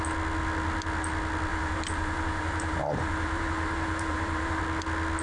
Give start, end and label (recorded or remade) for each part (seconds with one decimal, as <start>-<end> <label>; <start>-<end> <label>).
0.0-1.5 recorded; 1.5-4.6 remade; 4.6-5.2 recorded